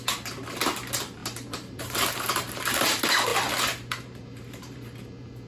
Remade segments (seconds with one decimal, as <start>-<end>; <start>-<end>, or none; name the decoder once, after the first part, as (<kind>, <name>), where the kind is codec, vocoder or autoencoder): 0.0-3.3 (vocoder, BigVGAN v2); 3.9-5.5